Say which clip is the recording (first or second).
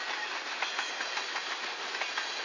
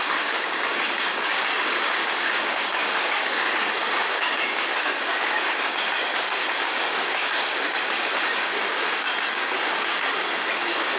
first